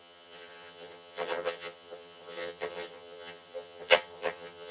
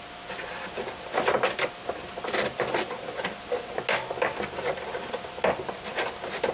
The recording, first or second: second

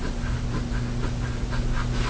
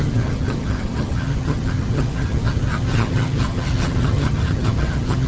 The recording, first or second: first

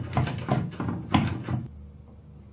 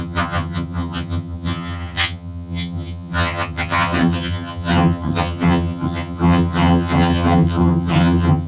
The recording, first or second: first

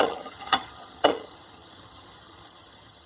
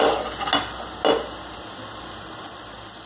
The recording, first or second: second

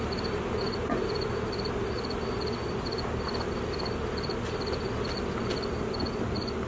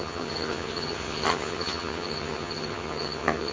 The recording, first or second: first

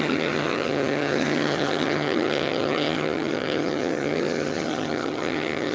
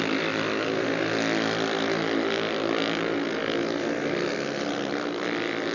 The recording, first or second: second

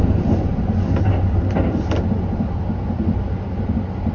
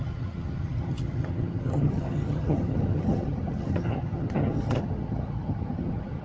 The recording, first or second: first